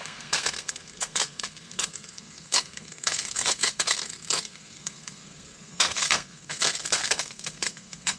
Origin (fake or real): fake